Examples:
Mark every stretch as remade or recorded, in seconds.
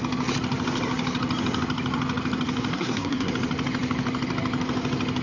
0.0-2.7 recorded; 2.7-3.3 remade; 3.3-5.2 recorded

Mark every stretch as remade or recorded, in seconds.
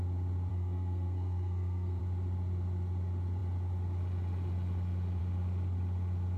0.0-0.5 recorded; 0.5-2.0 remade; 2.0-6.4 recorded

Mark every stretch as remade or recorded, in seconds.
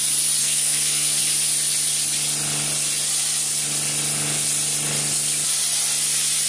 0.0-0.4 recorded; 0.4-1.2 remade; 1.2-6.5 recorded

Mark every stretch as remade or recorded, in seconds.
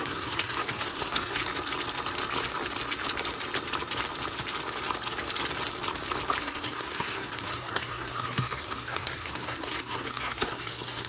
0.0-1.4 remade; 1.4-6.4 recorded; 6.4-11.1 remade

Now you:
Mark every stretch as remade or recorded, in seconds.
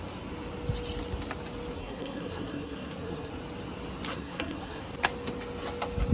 0.0-1.8 recorded; 1.8-3.3 remade; 3.3-4.1 recorded; 4.1-4.8 remade; 4.8-6.1 recorded